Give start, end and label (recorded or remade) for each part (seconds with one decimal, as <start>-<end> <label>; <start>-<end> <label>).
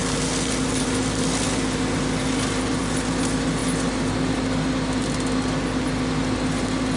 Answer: 0.0-7.0 recorded